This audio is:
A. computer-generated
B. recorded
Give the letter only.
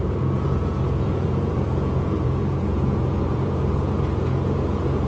A